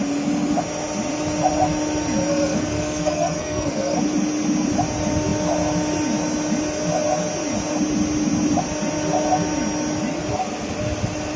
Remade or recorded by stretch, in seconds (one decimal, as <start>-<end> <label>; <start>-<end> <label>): 0.0-2.3 recorded; 2.3-4.0 remade; 4.0-11.4 recorded